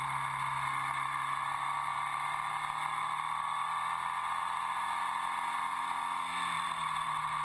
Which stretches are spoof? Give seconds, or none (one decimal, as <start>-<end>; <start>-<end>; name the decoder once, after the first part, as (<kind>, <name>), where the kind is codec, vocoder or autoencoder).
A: none